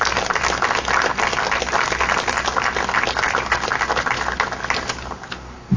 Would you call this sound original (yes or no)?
yes